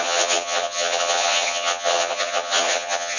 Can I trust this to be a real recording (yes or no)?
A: no